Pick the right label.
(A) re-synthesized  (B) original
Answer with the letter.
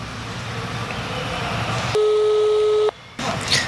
B